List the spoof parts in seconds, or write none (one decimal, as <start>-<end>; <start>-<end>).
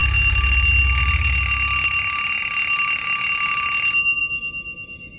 none